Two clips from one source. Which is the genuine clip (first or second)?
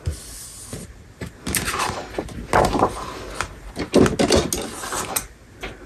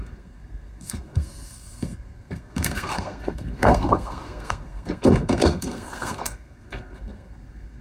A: first